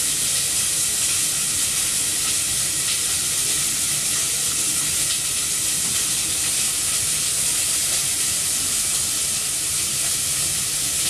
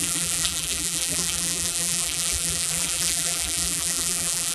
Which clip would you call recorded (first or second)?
first